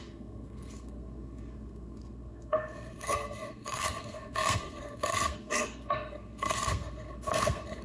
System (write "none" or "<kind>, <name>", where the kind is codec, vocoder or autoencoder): codec, SNAC